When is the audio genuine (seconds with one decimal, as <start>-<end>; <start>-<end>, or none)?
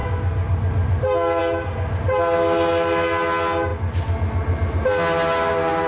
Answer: 0.0-5.9